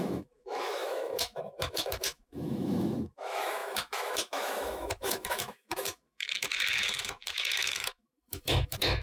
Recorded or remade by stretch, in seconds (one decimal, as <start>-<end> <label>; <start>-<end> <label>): 0.0-9.0 remade